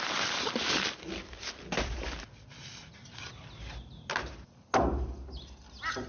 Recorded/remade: recorded